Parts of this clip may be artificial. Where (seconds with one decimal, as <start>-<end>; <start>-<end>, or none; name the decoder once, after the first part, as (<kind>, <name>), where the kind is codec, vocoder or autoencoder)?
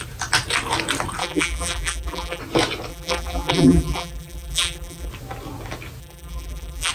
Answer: 1.2-2.4 (vocoder, BigVGAN v2); 2.9-5.1; 6.0-6.9